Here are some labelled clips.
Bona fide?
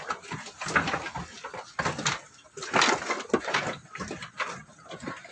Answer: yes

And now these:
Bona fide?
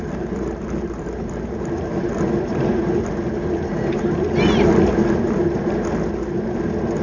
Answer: yes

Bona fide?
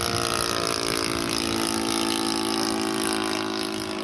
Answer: yes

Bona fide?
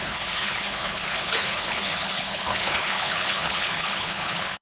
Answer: no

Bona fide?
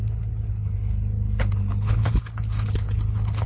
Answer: no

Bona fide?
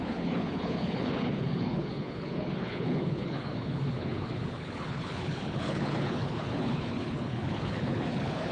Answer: no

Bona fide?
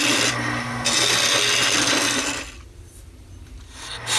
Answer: yes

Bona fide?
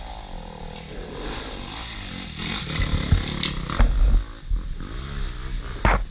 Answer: yes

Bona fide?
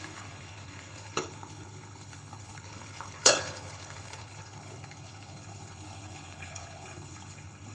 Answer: no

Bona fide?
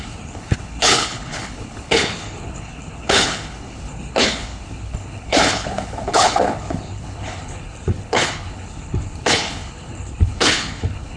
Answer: no